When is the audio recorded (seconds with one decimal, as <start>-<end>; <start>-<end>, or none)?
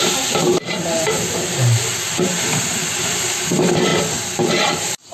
3.9-4.5